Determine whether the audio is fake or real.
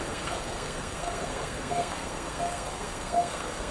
fake